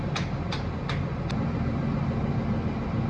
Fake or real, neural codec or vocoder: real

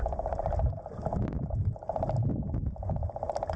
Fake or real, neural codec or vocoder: real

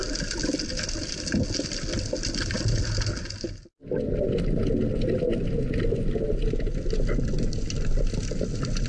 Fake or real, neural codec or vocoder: real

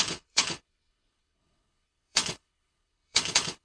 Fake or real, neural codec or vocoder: fake, codec, HILCodec